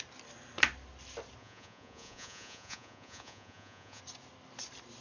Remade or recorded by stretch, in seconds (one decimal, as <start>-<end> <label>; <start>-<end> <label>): 0.0-1.4 recorded; 1.4-4.0 remade; 4.0-5.0 recorded